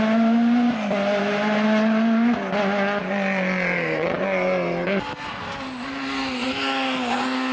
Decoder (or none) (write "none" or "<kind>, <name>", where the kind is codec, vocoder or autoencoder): none